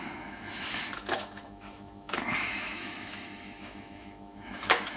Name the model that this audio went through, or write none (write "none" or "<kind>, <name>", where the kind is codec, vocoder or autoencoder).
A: autoencoder, DAC-VAE